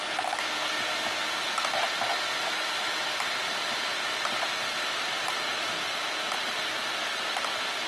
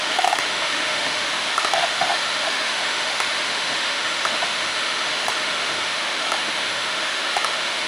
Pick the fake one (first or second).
second